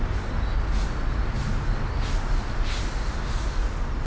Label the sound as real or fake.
real